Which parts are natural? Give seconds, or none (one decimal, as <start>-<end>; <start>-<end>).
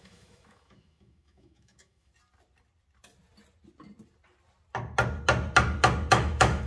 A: 2.1-6.1